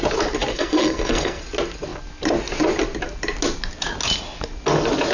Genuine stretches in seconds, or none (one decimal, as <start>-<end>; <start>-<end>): 0.0-0.5; 1.4-5.1